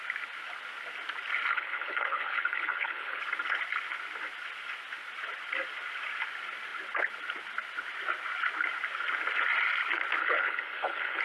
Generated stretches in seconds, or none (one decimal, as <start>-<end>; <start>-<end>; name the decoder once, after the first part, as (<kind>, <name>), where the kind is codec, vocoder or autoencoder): 1.5-3.2 (codec, HILCodec); 10.2-11.2